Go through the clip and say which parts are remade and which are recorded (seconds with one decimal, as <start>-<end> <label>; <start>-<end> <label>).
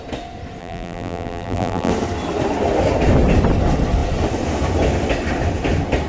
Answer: 0.0-0.6 recorded; 0.6-1.9 remade; 1.9-6.1 recorded